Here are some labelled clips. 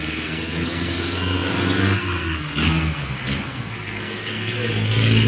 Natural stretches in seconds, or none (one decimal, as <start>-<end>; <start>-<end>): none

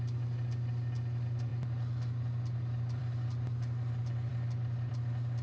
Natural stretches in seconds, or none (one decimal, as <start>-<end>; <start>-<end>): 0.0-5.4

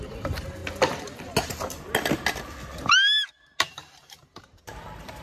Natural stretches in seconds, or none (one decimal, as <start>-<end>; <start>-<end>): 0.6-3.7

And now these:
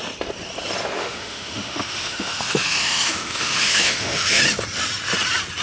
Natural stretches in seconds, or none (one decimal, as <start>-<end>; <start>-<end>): 0.0-1.0; 4.4-5.6